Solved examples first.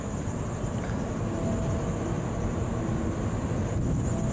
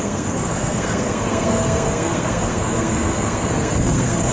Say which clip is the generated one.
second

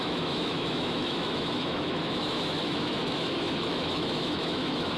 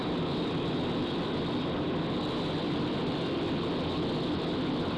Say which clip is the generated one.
first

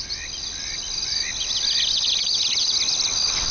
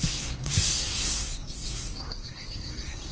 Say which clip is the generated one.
second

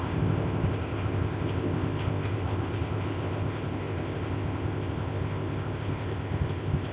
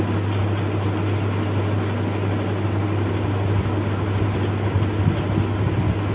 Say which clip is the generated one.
first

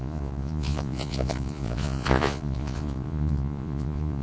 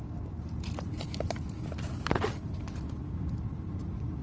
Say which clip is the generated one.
first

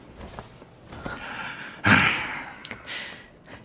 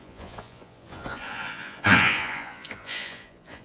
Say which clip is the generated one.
second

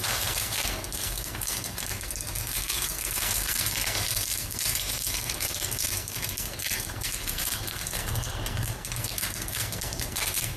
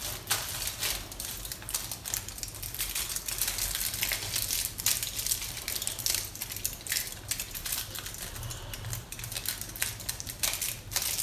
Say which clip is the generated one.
first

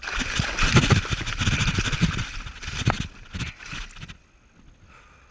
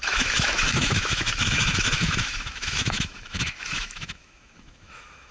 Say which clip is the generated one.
second